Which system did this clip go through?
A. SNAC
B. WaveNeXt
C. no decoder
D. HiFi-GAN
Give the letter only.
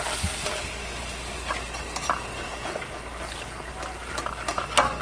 C